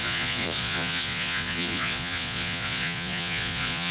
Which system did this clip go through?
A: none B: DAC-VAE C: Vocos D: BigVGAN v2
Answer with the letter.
C